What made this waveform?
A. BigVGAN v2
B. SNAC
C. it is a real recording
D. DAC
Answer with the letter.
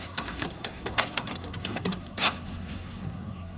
B